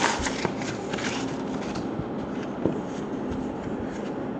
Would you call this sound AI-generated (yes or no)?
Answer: no